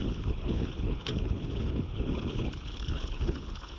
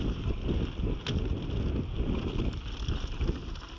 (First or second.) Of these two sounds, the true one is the second